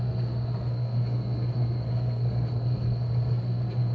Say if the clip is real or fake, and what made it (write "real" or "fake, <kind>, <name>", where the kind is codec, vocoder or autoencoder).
fake, codec, SNAC